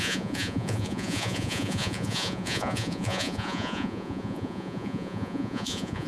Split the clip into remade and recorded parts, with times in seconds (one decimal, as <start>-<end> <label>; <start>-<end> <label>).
0.0-6.1 remade